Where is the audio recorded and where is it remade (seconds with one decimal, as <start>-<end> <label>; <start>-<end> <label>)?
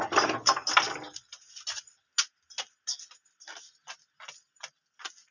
0.0-5.3 recorded